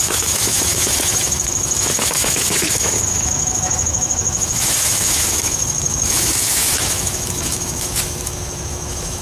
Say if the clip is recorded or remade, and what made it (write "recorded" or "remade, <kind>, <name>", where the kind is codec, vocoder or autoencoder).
remade, autoencoder, DAC-VAE